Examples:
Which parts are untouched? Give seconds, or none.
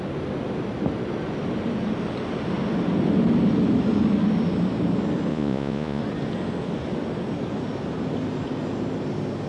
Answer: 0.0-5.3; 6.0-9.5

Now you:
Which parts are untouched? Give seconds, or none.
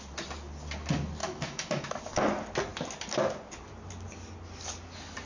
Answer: 0.0-1.2; 2.0-5.2